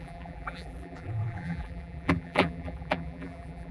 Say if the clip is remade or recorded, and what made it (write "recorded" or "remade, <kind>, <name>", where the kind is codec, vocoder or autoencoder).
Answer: remade, vocoder, BigVGAN v2